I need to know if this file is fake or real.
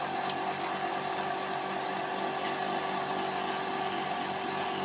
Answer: real